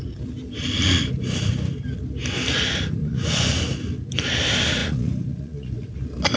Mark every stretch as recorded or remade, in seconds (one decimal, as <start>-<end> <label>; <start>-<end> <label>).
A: 0.0-3.0 recorded; 3.0-3.6 remade; 3.6-4.8 recorded; 4.8-5.9 remade; 5.9-6.4 recorded